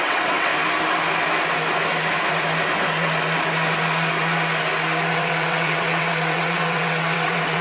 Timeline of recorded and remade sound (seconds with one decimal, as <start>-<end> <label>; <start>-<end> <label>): 0.0-0.5 remade; 0.5-5.1 recorded; 5.1-7.6 remade